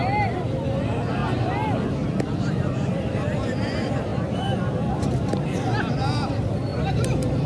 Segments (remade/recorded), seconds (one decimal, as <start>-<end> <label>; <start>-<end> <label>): 0.0-1.2 remade; 1.2-1.9 recorded; 1.9-7.5 remade